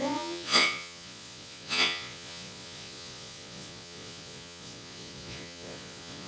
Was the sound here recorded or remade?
remade